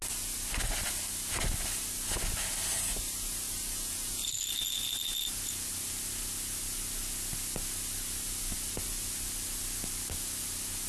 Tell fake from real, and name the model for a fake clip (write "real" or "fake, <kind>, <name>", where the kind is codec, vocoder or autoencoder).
real